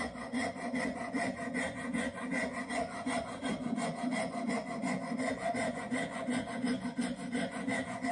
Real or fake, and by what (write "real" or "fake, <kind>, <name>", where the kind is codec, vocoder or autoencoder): fake, vocoder, Vocos